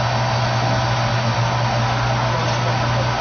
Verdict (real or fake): real